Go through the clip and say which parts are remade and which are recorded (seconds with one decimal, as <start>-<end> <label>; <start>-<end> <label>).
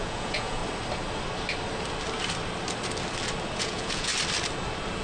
0.0-0.6 remade; 0.6-3.6 recorded; 3.6-4.1 remade; 4.1-5.0 recorded